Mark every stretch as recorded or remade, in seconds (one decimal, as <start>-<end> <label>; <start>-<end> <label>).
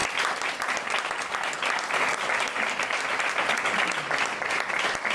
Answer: 0.0-5.1 recorded